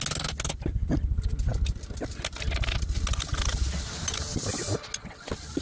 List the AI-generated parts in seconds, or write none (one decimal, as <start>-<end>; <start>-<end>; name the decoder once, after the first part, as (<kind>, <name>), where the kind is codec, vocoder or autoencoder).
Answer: none